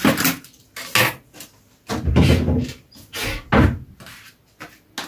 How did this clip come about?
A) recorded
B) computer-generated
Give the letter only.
A